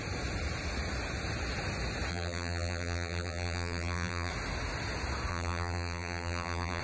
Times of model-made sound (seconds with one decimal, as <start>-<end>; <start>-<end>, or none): 2.1-4.3; 5.3-6.8